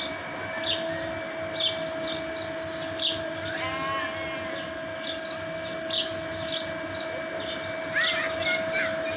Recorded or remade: recorded